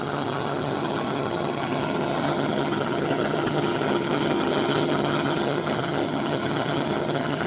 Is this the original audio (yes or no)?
no